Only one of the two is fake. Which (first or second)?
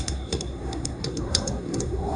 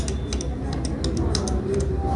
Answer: first